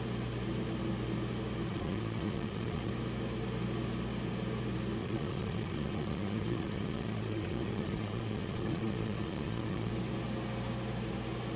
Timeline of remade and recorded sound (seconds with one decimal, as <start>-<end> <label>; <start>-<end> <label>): 0.0-1.7 recorded; 1.7-2.9 remade; 2.9-5.0 recorded; 5.0-9.9 remade; 9.9-11.6 recorded